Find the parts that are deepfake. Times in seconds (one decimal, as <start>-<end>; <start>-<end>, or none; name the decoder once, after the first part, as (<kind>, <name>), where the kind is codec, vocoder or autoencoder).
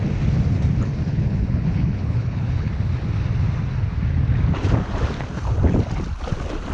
1.1-2.7 (codec, HILCodec)